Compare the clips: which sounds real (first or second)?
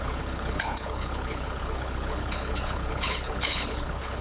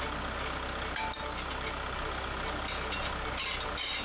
second